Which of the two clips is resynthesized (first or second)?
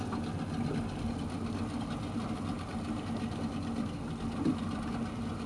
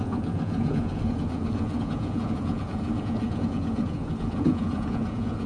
second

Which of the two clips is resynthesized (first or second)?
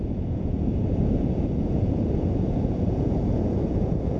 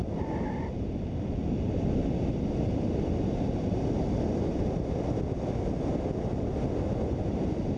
first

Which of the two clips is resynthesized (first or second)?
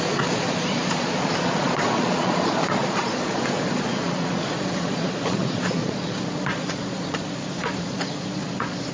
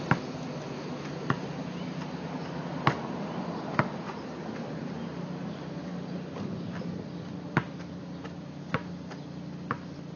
first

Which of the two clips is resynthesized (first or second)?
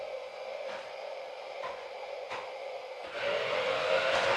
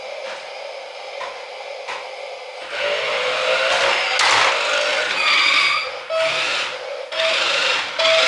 first